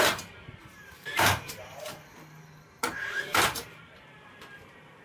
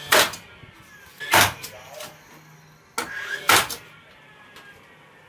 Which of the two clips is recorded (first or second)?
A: second